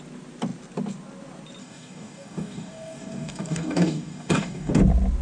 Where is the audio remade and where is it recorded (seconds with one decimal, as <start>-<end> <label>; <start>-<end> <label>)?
0.0-1.6 recorded; 1.6-4.7 remade; 4.7-5.2 recorded